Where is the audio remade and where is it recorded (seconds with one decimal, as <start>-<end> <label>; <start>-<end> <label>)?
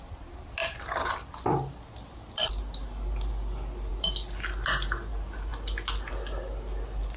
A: 0.0-7.2 recorded